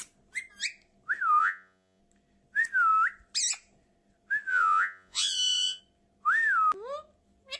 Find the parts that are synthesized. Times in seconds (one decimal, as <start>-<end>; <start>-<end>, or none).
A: 1.4-2.0; 4.5-5.8